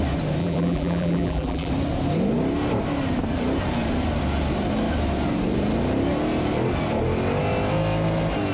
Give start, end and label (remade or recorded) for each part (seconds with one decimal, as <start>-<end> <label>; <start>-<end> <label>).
0.0-0.4 recorded; 0.4-1.7 remade; 1.7-8.5 recorded